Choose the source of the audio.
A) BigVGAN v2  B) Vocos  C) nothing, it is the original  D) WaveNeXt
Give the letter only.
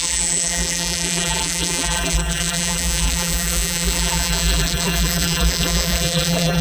A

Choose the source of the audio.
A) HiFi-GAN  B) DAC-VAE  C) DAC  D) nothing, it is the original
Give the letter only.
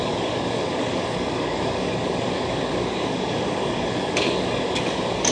C